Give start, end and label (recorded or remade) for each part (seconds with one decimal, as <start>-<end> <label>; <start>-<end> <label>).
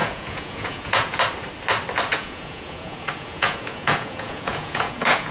0.0-1.2 remade; 1.2-2.1 recorded; 2.1-5.3 remade